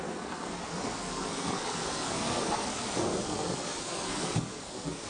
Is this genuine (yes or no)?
no